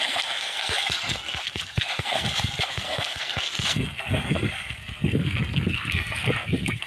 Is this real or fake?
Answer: fake